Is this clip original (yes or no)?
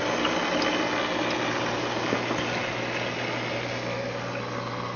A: yes